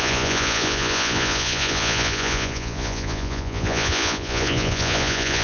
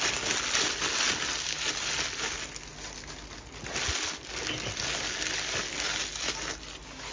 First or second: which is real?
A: second